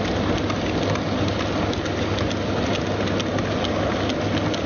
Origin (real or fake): real